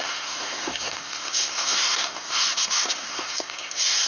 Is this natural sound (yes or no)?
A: no